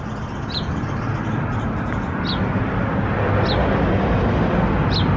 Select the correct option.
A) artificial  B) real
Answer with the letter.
B